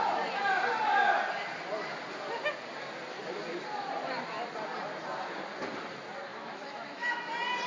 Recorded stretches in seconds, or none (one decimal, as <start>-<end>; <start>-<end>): 0.0-6.3; 7.2-7.7